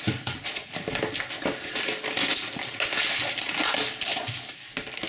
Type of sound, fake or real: real